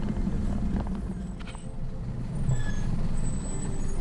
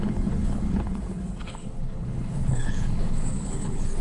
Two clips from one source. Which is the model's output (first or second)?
second